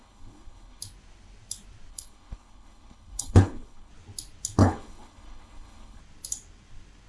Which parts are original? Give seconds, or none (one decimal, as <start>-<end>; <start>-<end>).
0.8-1.9; 3.9-4.6; 6.0-7.1